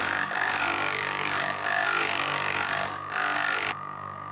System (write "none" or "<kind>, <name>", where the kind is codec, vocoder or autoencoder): codec, DAC